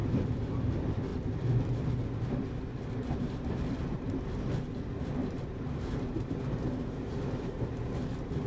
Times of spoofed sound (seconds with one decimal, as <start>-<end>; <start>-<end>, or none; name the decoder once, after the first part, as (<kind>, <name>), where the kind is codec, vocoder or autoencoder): 0.0-0.7 (vocoder, BigVGAN v2); 3.0-3.6; 5.2-7.9